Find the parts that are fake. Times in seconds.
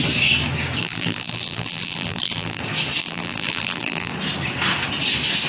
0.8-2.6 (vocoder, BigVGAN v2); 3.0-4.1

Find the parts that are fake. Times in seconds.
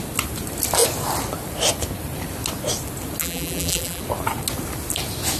3.2-4.0 (vocoder, BigVGAN v2)